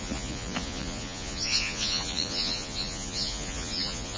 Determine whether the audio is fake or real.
fake